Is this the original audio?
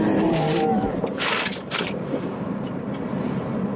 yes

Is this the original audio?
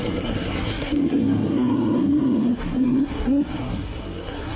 no